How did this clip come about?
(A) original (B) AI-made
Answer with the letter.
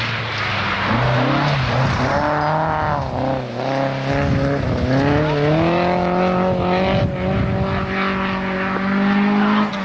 A